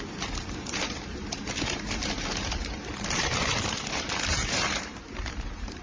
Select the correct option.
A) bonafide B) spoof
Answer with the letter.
B